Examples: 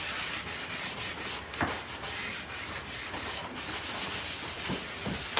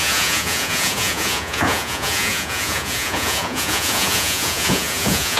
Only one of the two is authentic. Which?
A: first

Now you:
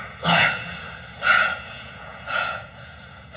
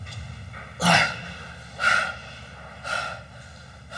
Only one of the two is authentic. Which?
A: second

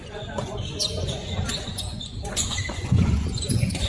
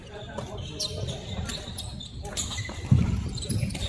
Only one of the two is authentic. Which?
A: second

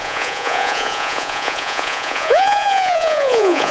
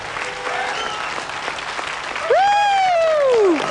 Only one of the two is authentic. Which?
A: second